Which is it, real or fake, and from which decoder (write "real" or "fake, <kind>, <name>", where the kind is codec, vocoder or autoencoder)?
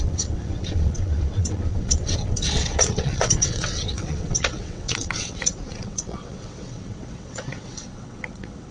fake, vocoder, WaveNeXt